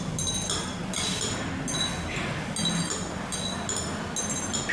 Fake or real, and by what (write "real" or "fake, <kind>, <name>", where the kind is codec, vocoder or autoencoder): real